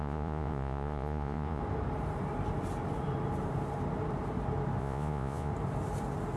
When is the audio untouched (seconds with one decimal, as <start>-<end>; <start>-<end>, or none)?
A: 1.6-4.8; 5.5-6.4